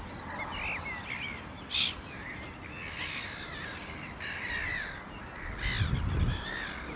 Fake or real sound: real